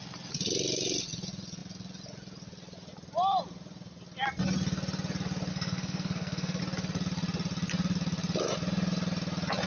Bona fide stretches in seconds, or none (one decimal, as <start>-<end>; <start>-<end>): 0.0-5.5; 6.6-9.7